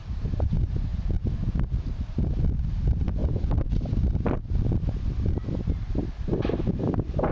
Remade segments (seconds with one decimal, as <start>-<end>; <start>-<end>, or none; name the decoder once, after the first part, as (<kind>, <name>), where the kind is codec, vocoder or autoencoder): 0.0-0.9 (vocoder, BigVGAN v2); 2.2-3.2; 5.6-7.3